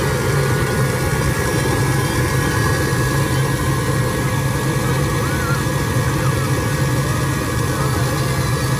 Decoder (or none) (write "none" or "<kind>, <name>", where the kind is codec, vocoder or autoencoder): none